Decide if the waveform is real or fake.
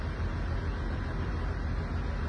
fake